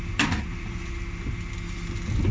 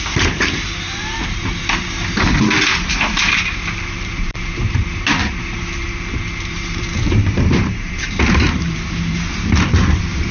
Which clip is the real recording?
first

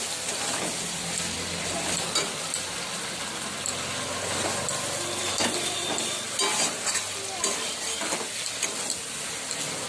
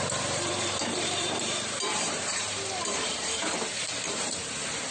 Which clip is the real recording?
first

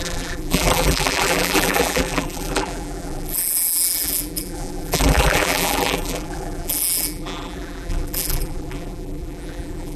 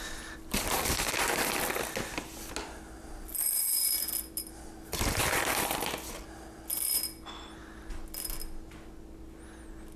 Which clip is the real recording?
second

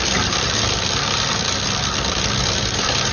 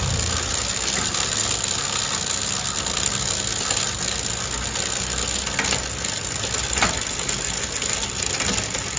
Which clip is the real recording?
second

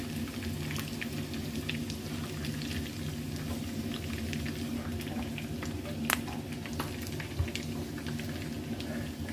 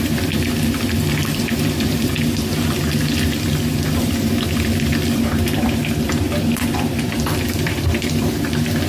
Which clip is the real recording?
first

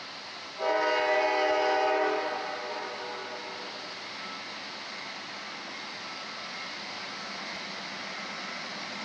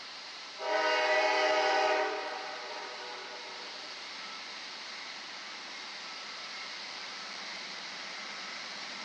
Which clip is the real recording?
first